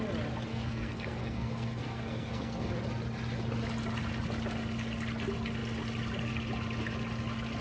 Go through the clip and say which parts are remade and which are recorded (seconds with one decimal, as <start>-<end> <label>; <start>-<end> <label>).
0.0-0.5 recorded; 0.5-2.7 remade; 2.7-7.6 recorded